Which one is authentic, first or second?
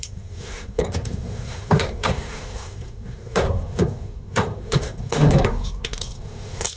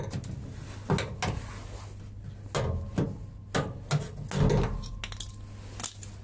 second